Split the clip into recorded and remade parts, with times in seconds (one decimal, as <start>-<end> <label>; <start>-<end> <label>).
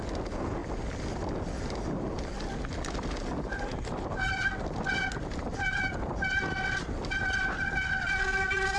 0.0-8.8 recorded